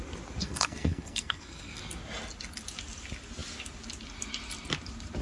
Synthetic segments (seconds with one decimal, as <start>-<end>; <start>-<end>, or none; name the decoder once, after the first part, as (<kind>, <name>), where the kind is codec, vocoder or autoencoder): 0.4-1.8 (codec, SNAC)